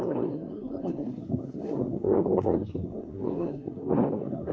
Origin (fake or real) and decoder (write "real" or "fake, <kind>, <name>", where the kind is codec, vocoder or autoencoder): fake, codec, SNAC